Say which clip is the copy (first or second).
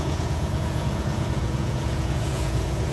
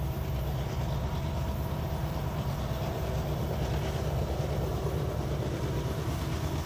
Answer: first